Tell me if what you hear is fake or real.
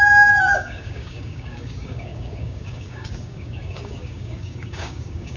fake